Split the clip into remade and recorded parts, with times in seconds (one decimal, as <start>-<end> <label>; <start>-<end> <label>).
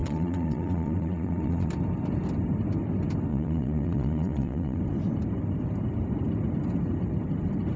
0.0-1.7 remade; 1.7-3.3 recorded; 3.3-4.8 remade; 4.8-7.8 recorded